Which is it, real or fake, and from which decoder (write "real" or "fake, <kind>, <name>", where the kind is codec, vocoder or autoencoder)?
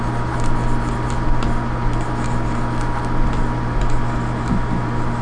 real